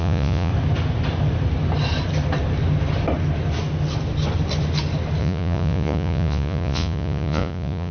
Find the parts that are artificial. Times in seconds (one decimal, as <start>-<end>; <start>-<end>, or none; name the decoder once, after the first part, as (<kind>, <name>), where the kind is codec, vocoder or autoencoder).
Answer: 0.0-0.5 (vocoder, Vocos); 5.2-7.9

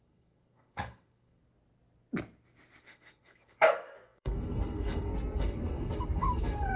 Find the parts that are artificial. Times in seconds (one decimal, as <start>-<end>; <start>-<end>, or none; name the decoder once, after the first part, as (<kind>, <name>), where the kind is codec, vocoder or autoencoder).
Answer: 0.0-1.4 (codec, SNAC); 2.8-6.8

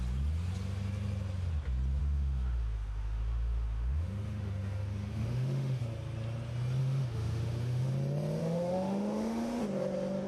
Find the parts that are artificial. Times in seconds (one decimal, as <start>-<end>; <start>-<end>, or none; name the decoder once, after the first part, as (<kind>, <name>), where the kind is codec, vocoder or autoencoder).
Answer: 2.0-5.8 (autoencoder, DAC-VAE); 6.8-7.9; 8.4-9.6

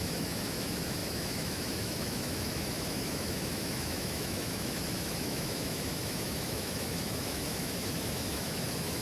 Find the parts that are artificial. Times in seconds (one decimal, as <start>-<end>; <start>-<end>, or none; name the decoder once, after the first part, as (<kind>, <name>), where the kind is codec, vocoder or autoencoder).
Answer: 0.0-9.0 (autoencoder, DAC-VAE)

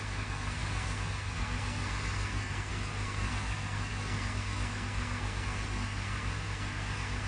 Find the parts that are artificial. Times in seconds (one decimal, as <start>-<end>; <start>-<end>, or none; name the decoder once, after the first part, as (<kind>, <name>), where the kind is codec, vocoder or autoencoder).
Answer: 0.0-7.3 (codec, SNAC)

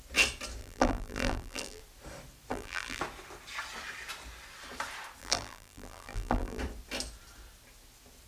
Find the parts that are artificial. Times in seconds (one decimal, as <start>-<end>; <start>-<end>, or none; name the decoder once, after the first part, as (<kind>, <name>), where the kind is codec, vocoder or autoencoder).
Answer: 0.6-1.8 (vocoder, BigVGAN v2); 2.5-3.0; 5.2-6.6